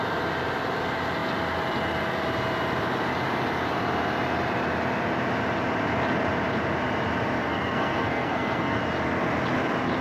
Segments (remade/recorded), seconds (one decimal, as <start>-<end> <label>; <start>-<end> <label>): 0.0-7.4 recorded; 7.4-8.8 remade; 8.8-10.0 recorded